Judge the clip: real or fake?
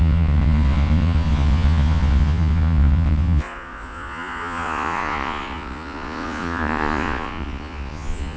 fake